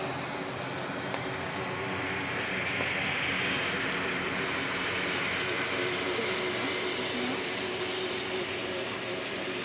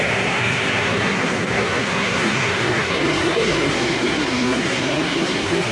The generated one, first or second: second